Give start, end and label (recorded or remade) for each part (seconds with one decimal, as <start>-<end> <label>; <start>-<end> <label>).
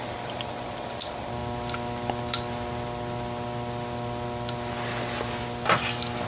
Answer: 0.0-6.3 recorded